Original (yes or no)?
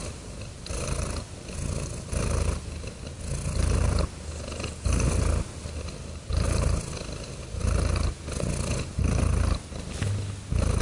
yes